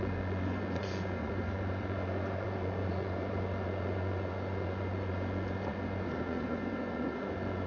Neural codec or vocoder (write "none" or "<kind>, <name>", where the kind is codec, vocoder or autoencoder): vocoder, Vocos